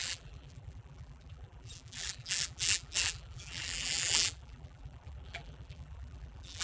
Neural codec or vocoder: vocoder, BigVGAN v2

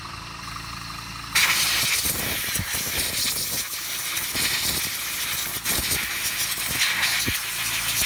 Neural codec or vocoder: none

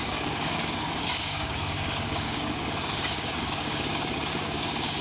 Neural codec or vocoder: codec, DAC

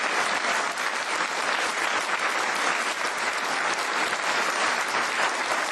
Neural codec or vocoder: vocoder, BigVGAN v2